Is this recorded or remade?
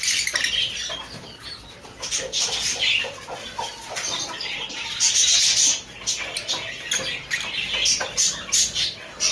recorded